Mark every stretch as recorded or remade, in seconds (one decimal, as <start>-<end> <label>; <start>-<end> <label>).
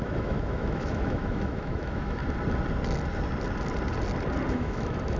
0.0-2.2 remade; 2.2-4.5 recorded; 4.5-5.2 remade